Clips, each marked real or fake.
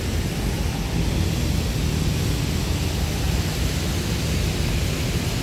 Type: real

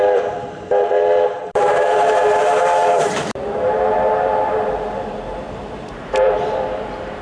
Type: fake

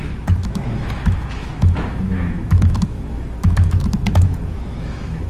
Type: fake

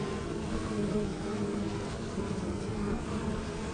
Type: fake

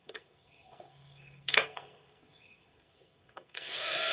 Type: fake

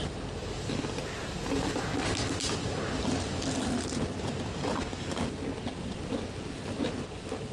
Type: real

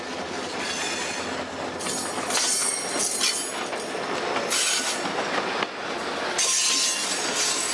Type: real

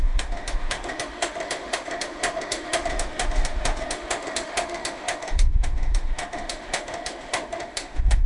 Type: fake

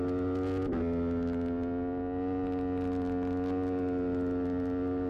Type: real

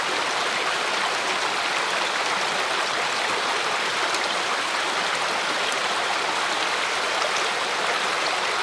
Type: real